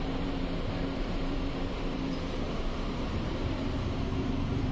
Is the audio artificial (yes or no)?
yes